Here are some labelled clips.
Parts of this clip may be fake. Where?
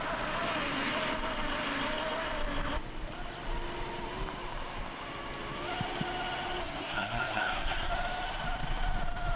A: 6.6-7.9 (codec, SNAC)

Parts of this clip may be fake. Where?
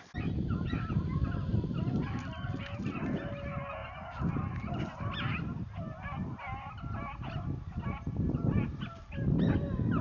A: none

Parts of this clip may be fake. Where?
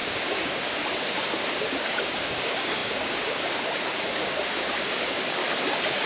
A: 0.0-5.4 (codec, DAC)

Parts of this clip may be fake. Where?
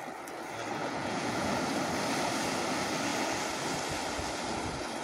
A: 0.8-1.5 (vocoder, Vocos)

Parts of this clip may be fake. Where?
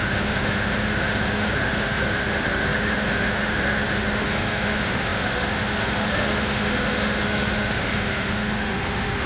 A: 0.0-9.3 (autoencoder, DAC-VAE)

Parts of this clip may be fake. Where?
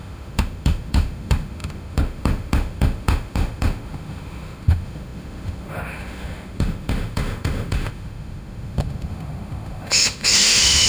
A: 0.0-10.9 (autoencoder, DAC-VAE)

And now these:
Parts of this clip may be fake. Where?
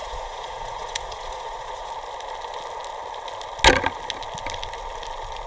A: 0.0-1.9 (vocoder, Vocos)